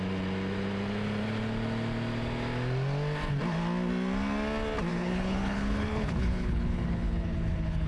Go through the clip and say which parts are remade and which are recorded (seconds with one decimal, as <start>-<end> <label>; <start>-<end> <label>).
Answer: 0.0-4.9 recorded; 4.9-7.9 remade